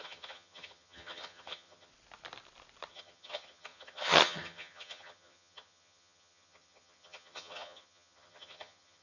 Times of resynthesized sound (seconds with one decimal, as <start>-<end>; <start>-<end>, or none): 0.0-1.9; 2.9-9.0